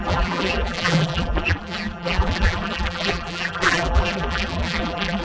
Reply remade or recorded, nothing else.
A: remade